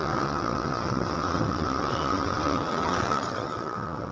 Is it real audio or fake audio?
fake